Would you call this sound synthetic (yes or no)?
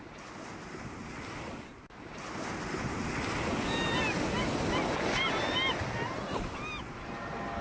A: no